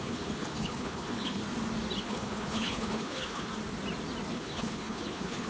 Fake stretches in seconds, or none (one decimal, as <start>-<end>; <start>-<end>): 0.0-1.4; 2.0-3.5; 4.3-5.5